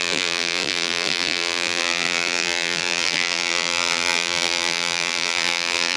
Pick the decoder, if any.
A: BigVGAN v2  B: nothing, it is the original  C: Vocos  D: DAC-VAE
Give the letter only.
A